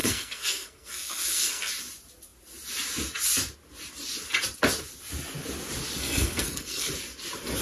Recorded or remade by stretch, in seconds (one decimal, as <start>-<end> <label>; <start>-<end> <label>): 0.0-1.7 remade; 1.7-6.0 recorded; 6.0-6.9 remade; 6.9-7.6 recorded